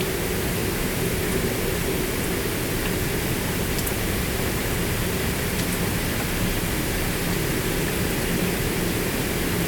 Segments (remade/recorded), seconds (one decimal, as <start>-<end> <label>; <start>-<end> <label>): 0.0-9.7 recorded